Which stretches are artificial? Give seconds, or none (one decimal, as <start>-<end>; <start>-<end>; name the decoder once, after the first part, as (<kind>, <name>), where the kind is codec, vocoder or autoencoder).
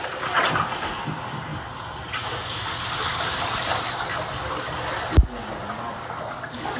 none